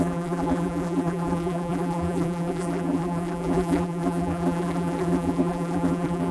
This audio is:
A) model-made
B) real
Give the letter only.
A